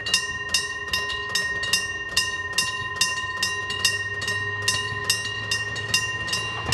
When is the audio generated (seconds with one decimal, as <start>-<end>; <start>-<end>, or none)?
none